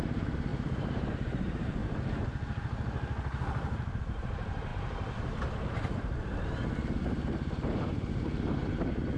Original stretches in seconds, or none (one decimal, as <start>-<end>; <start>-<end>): 1.8-4.0